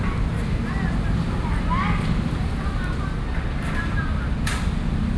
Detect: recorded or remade recorded